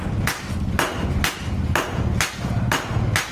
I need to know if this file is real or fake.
real